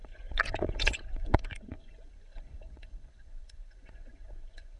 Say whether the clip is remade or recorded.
remade